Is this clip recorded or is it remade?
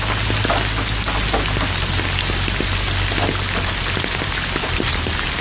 recorded